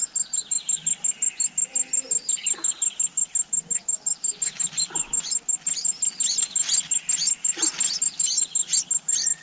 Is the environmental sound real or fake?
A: real